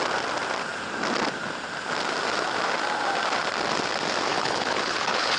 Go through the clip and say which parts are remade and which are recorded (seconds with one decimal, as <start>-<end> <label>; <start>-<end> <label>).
0.0-4.3 recorded; 4.3-5.4 remade